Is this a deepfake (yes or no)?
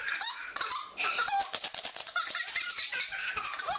yes